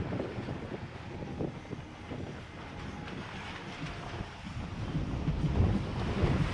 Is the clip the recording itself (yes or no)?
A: yes